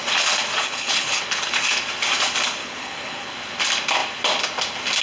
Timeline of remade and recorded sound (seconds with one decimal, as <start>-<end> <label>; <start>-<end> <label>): 0.0-0.6 recorded; 0.6-1.2 remade; 1.2-2.6 recorded; 2.6-3.3 remade; 3.3-5.0 recorded